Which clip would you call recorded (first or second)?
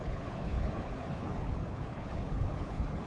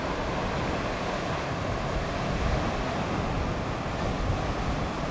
second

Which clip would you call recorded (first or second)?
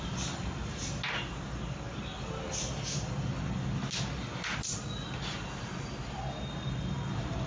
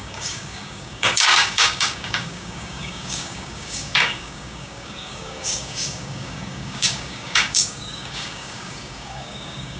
first